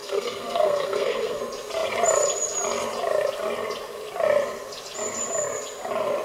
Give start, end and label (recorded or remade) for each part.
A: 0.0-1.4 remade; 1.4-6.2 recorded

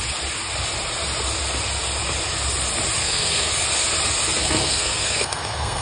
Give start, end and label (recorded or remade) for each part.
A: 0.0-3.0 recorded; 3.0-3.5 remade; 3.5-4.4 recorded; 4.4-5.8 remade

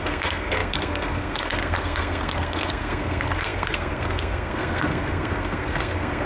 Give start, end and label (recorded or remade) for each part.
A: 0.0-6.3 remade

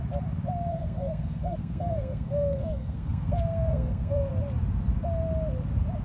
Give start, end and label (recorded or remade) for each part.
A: 0.0-0.7 recorded; 0.7-4.3 remade; 4.3-6.0 recorded

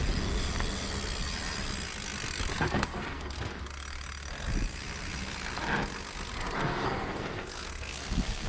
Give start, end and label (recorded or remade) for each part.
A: 0.0-2.5 recorded; 2.5-3.6 remade; 3.6-6.6 recorded; 6.6-8.5 remade